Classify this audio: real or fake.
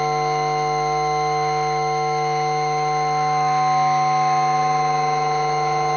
fake